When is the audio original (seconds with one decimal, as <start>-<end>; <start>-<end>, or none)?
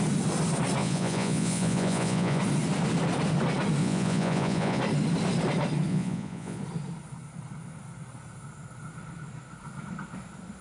0.0-0.8; 2.4-3.8; 4.8-5.9; 6.6-10.6